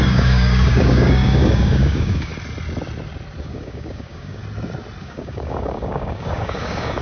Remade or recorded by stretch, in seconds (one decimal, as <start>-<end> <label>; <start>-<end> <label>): 0.0-2.3 remade; 2.3-3.4 recorded; 3.4-4.4 remade; 4.4-5.0 recorded; 5.0-7.0 remade